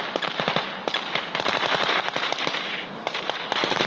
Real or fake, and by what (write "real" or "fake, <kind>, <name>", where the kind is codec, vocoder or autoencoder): real